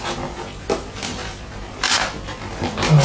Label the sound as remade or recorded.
recorded